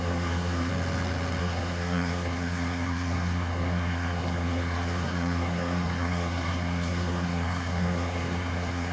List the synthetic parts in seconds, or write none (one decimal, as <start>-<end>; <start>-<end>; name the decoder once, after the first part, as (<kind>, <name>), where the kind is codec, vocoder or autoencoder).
0.0-0.7 (codec, SNAC); 1.4-8.9